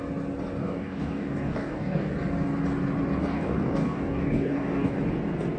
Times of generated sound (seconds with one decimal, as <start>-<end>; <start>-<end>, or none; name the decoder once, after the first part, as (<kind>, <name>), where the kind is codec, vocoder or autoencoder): 0.6-2.1 (codec, DAC); 3.2-5.0